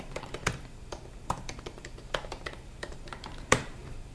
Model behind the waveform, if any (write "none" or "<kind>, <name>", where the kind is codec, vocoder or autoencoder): vocoder, BigVGAN v2